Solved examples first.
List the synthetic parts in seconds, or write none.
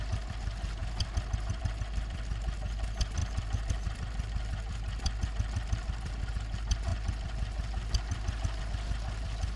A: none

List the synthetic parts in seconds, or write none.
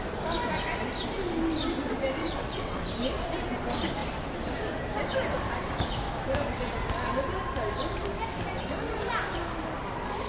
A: 2.2-2.9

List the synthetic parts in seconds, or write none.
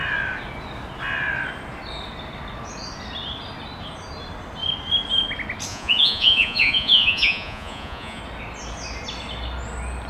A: 5.7-8.2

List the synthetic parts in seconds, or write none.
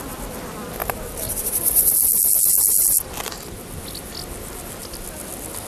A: 0.8-1.9